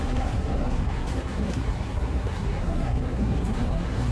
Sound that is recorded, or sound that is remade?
remade